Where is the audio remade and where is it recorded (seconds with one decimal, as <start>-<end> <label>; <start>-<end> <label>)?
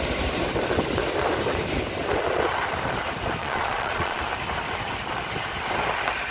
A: 0.0-3.4 recorded; 3.4-4.2 remade; 4.2-6.3 recorded